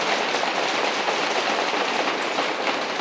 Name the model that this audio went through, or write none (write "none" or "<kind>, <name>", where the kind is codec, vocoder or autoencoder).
none